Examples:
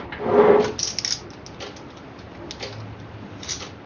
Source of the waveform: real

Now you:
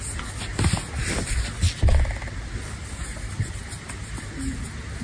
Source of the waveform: real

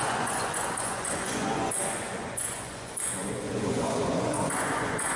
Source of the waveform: fake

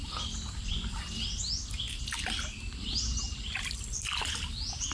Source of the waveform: real